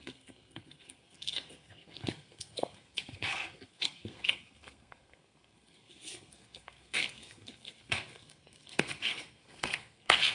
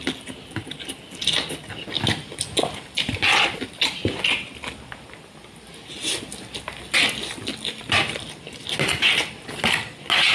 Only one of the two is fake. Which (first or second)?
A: first